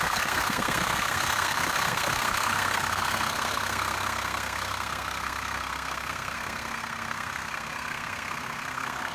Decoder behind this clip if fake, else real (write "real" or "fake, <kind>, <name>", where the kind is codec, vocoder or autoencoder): fake, codec, SNAC